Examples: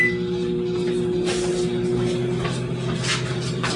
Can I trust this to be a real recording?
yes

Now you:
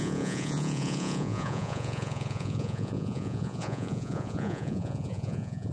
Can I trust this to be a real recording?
no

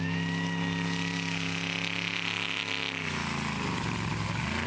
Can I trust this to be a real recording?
yes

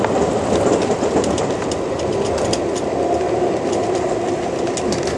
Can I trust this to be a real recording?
yes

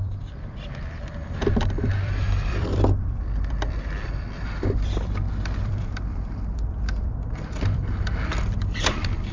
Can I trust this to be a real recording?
no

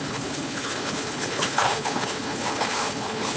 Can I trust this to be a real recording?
no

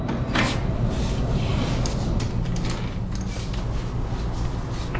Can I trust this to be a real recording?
yes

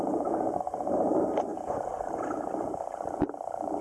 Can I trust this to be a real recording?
no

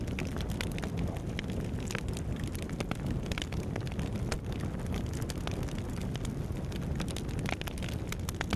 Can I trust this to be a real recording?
yes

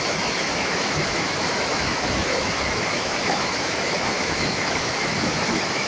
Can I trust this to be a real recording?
no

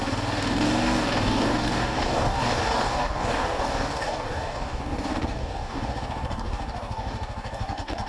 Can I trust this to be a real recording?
no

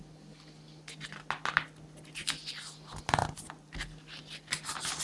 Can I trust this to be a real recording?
yes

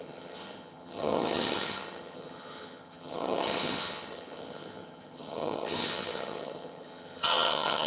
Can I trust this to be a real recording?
no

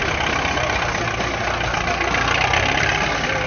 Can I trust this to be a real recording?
yes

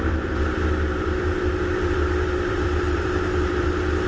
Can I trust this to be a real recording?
no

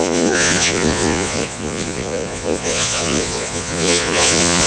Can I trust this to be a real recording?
no